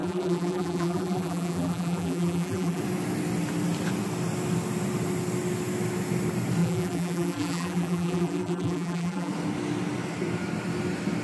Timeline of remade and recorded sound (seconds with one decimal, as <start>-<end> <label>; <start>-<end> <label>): 0.0-2.8 remade; 2.8-6.6 recorded; 6.6-9.3 remade; 9.3-11.2 recorded